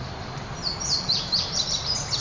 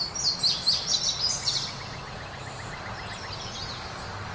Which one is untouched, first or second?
second